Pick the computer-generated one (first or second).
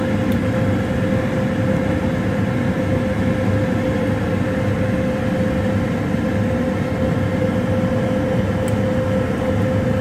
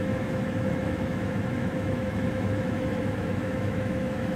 second